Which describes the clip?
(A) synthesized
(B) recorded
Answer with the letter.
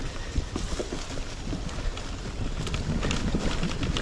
B